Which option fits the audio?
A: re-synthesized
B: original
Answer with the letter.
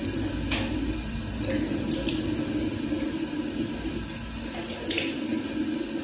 B